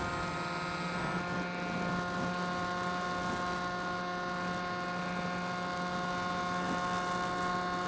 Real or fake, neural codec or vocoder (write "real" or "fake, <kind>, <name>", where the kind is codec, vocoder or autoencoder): real